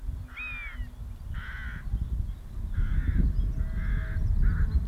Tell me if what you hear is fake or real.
real